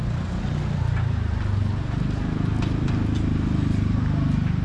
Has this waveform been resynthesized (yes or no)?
no